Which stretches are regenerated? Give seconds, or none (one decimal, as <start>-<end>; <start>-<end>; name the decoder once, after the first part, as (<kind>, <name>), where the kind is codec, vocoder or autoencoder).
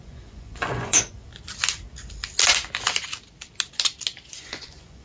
0.0-1.3 (vocoder, Vocos); 4.3-5.0